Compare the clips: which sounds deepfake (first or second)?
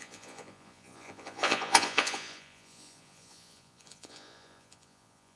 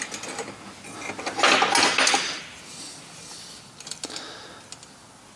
first